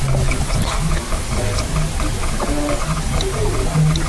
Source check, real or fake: real